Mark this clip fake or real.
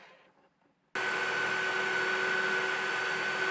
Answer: real